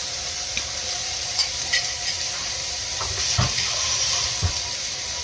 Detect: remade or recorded remade